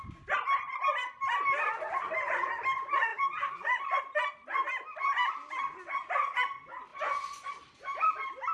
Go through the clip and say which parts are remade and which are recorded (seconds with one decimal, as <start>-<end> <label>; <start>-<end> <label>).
0.0-3.1 recorded; 3.1-4.0 remade; 4.0-6.9 recorded; 6.9-7.5 remade; 7.5-8.5 recorded